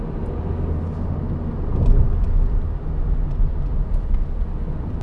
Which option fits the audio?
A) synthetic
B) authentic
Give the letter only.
B